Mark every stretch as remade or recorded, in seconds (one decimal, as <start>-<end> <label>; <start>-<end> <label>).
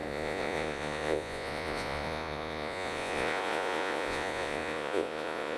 0.0-5.6 remade